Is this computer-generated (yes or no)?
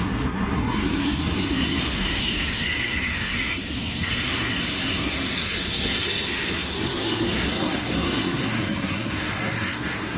yes